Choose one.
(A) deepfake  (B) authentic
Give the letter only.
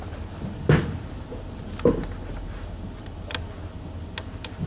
B